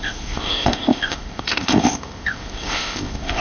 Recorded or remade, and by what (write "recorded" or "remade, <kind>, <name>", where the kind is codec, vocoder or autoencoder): remade, codec, ZipCodec